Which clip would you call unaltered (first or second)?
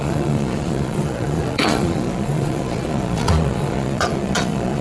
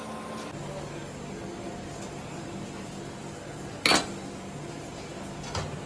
second